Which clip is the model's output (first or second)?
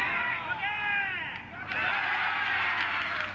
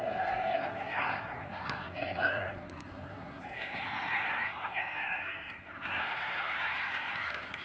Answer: second